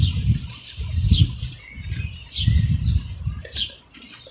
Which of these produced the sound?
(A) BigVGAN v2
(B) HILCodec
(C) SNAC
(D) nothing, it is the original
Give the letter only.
A